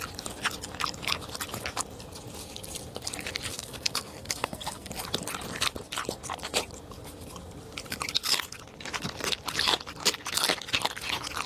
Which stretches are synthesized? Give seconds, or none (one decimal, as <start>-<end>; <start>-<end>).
3.5-4.9